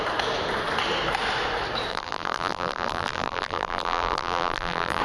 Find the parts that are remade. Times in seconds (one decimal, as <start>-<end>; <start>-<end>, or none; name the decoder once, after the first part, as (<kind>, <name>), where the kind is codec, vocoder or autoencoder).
1.9-5.0 (vocoder, BigVGAN v2)